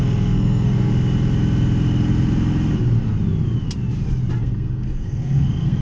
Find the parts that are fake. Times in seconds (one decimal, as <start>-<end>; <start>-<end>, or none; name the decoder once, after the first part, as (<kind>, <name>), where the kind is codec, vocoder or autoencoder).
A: 0.0-0.9 (codec, SNAC); 4.4-5.8

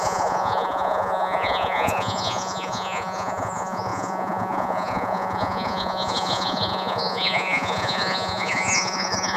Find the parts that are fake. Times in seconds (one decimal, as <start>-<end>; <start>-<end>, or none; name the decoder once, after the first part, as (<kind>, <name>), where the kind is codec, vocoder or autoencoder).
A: 0.0-9.4 (vocoder, Vocos)

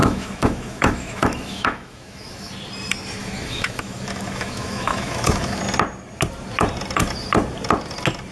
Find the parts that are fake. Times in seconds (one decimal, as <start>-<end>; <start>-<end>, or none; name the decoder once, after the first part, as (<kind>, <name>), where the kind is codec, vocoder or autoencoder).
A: 0.0-2.5 (autoencoder, DAC-VAE); 3.2-5.6

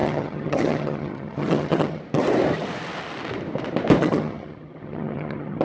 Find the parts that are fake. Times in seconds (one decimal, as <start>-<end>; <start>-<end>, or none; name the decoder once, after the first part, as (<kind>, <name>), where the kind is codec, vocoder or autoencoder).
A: 0.0-2.0 (vocoder, HiFi-GAN); 4.0-5.6

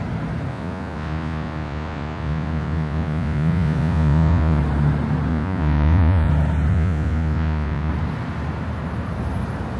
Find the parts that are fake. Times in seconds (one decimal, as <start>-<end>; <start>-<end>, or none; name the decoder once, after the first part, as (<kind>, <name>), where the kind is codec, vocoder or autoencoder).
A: 0.5-4.6 (vocoder, Vocos); 5.3-6.3; 6.7-7.9

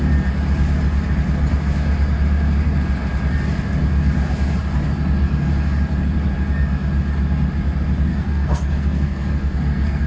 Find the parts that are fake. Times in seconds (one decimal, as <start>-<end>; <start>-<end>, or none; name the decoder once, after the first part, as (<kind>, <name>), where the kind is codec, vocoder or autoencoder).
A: 8.1-10.1 (codec, SNAC)

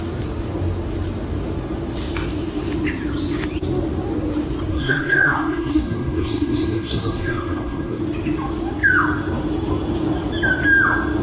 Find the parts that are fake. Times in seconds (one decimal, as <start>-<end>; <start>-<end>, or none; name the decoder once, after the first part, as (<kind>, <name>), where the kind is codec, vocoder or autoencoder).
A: 4.7-8.0 (codec, SNAC)